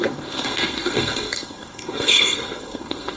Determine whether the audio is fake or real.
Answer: fake